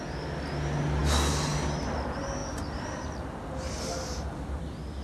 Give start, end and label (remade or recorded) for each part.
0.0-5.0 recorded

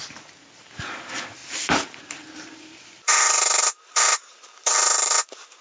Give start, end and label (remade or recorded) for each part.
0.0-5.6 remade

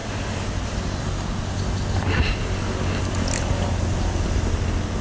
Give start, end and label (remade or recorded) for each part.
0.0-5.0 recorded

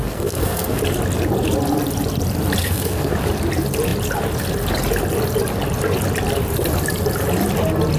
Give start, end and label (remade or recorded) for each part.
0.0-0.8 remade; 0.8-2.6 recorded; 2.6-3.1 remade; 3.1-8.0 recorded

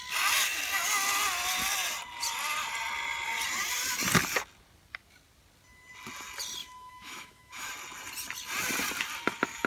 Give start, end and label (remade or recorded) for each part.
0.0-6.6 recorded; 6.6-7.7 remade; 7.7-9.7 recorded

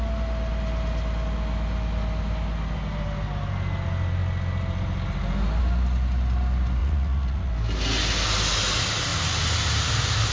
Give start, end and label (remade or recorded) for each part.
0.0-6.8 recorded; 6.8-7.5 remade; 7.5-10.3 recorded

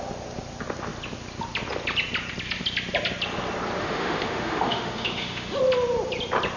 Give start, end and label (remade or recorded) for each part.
0.0-3.8 recorded; 3.8-5.6 remade; 5.6-6.6 recorded

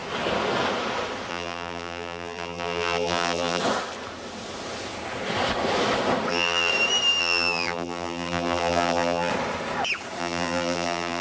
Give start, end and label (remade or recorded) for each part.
0.0-1.3 recorded; 1.3-3.6 remade; 3.6-6.3 recorded; 6.3-6.7 remade; 6.7-7.2 recorded; 7.2-9.3 remade; 9.3-10.2 recorded; 10.2-11.2 remade